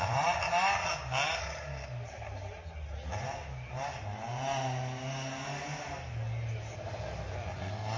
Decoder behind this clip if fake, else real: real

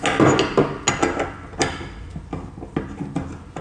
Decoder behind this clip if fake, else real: real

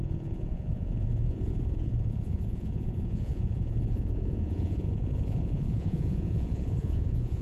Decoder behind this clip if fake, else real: fake, vocoder, Vocos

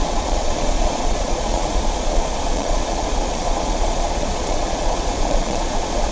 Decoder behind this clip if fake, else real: fake, vocoder, Vocos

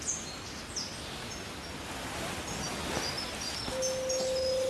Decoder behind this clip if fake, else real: real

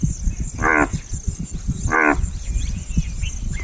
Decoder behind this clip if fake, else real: real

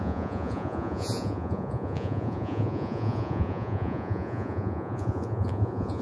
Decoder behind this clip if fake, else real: fake, vocoder, Vocos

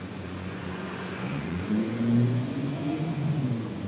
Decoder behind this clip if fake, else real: fake, vocoder, Vocos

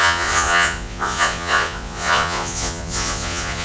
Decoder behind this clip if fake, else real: fake, vocoder, Vocos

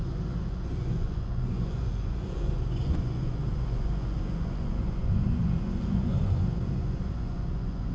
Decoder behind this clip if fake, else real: fake, vocoder, Vocos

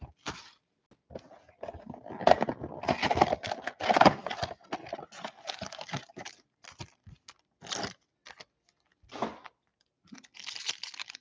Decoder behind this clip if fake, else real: real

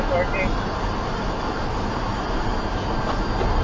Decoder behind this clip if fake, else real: real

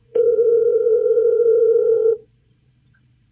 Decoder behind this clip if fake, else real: fake, vocoder, Vocos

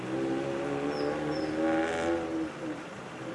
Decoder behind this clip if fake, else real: real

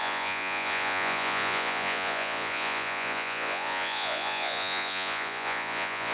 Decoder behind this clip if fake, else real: fake, vocoder, Vocos